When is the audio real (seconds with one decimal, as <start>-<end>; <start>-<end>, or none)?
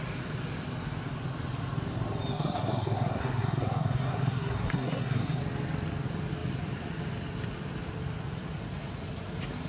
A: 0.0-2.3; 5.4-9.7